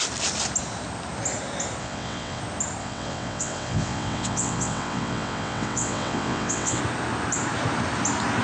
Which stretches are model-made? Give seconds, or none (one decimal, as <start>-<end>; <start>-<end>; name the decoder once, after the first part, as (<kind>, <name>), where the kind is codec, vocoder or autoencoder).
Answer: 1.8-2.4 (vocoder, WaveNeXt); 2.8-6.8